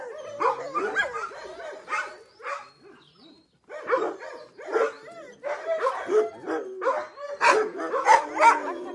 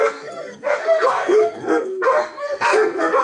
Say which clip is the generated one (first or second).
second